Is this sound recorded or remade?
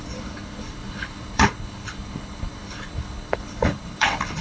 remade